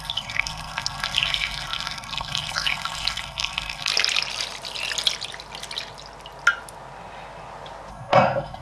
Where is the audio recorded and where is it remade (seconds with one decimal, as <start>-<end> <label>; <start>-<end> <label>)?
0.0-3.9 remade; 3.9-7.9 recorded; 7.9-8.6 remade